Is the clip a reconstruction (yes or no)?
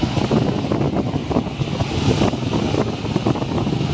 no